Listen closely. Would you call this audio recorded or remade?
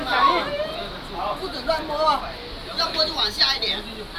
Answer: recorded